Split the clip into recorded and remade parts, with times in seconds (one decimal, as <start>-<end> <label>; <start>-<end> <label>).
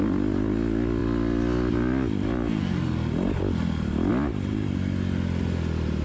0.0-6.0 recorded